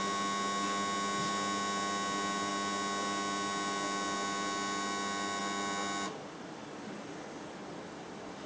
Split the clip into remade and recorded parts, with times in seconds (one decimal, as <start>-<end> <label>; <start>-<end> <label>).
0.0-8.5 recorded